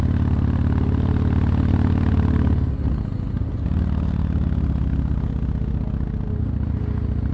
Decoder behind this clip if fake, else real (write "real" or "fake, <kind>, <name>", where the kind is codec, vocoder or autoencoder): real